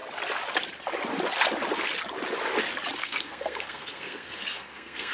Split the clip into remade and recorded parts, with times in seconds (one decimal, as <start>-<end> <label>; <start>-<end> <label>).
0.0-3.0 recorded; 3.0-5.1 remade